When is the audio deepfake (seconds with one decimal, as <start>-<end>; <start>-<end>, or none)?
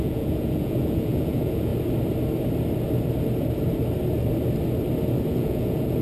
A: 0.0-1.7; 5.3-6.0